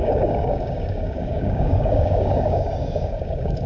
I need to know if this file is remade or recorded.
remade